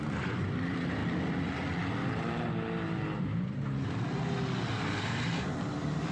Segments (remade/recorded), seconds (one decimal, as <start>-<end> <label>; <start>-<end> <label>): 0.0-1.0 remade; 1.0-4.7 recorded; 4.7-6.1 remade